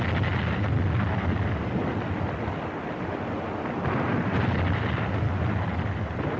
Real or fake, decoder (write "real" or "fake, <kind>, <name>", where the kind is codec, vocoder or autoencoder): real